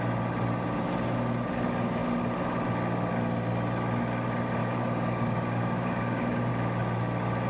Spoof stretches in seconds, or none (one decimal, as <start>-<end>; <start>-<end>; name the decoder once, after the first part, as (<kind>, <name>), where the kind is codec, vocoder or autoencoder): 4.6-6.5 (codec, DAC)